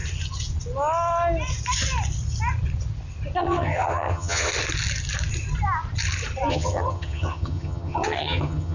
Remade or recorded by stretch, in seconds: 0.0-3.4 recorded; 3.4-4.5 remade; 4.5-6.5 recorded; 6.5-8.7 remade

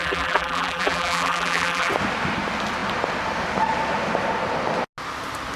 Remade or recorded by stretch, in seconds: 0.0-1.9 remade; 1.9-5.6 recorded

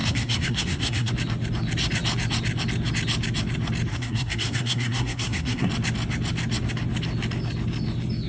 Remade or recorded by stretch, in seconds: 0.0-1.1 remade; 1.1-3.9 recorded; 3.9-5.7 remade; 5.7-8.3 recorded